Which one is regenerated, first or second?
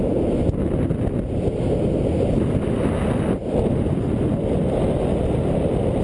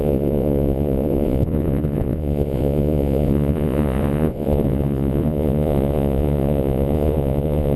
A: second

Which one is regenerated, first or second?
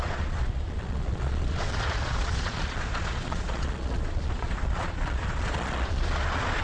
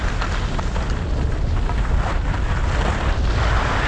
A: first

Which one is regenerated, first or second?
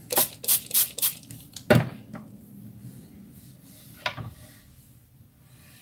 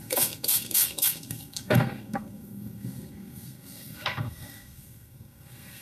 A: second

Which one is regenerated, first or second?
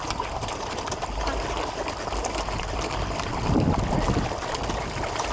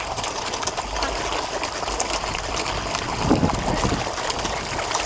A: first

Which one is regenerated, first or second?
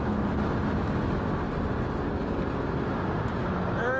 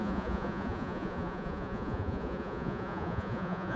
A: second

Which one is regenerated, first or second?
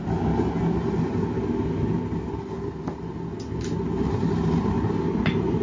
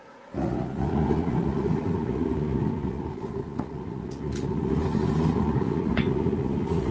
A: second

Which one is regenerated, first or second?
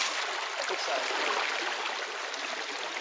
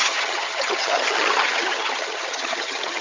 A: second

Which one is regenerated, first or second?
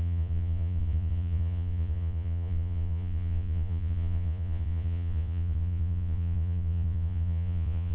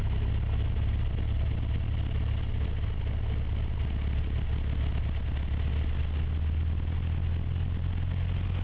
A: first